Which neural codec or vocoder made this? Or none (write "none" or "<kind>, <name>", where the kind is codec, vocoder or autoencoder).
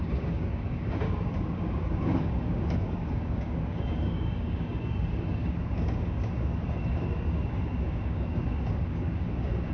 codec, DAC